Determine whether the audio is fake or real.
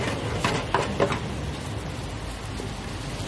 real